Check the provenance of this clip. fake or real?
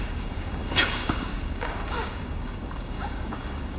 fake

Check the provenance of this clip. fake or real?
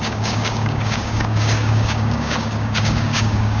fake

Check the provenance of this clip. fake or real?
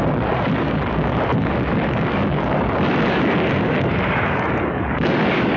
fake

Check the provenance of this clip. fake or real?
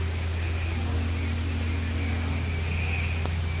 real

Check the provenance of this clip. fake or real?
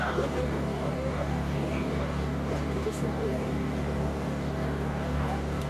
fake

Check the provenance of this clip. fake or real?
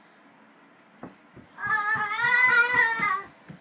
real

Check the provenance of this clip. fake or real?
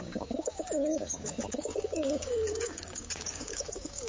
fake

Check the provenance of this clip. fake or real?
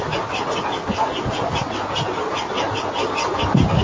real